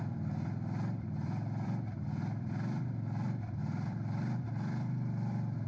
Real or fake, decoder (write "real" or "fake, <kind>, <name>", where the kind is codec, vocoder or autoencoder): fake, vocoder, BigVGAN v2